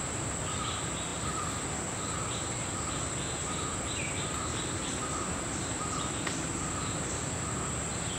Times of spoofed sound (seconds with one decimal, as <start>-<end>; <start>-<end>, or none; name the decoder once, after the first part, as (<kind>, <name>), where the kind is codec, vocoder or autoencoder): 1.1-2.9 (vocoder, BigVGAN v2)